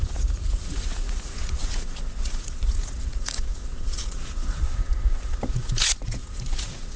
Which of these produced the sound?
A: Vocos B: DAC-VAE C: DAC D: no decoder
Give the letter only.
A